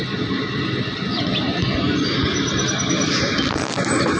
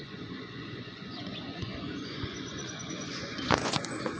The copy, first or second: second